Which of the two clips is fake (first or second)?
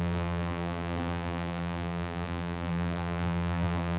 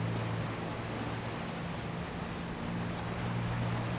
first